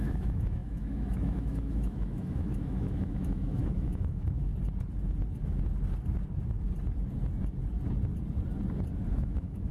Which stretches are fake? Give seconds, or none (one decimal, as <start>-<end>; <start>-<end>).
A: 0.0-4.5; 9.1-9.7